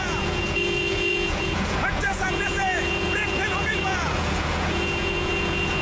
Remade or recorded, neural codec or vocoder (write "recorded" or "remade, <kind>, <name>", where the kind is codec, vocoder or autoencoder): remade, vocoder, Vocos